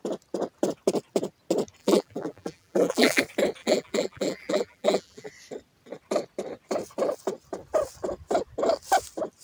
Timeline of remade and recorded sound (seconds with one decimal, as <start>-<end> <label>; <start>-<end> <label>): 0.0-1.8 recorded; 1.8-3.2 remade; 3.2-3.6 recorded; 3.6-5.3 remade; 5.3-9.4 recorded